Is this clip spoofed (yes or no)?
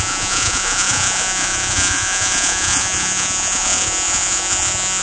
yes